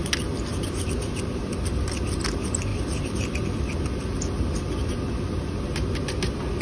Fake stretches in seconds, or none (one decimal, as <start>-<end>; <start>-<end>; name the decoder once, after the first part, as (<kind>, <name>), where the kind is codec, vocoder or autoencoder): 0.5-1.4 (vocoder, BigVGAN v2); 2.7-3.6